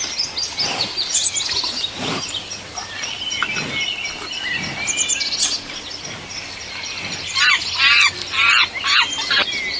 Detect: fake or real real